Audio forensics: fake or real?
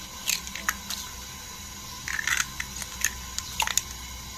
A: real